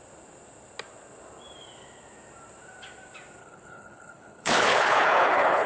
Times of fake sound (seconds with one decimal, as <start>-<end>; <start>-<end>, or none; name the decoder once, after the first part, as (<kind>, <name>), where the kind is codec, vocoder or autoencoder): 3.4-5.7 (codec, HILCodec)